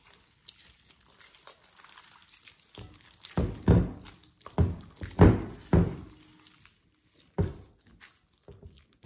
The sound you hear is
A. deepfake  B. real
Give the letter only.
B